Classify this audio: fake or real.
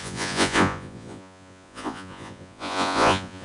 fake